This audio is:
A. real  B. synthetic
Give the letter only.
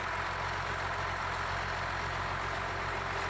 A